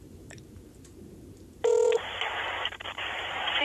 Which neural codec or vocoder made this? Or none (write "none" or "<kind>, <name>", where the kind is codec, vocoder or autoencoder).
vocoder, BigVGAN v2